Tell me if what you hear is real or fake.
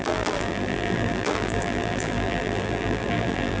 fake